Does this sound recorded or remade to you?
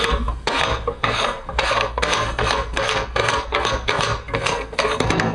remade